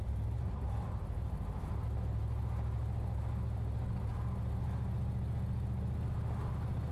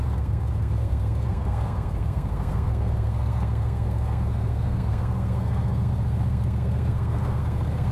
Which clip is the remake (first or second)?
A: second